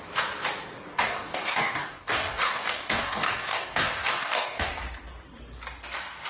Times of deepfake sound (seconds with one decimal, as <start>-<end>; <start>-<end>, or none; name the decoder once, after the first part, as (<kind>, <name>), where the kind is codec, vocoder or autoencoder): 0.9-4.7 (codec, DAC)